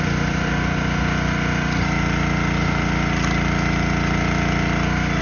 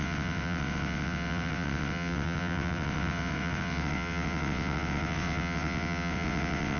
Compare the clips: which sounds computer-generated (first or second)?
second